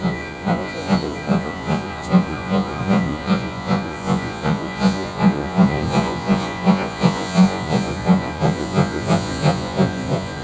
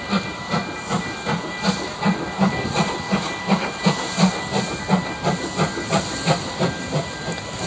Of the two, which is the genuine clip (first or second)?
second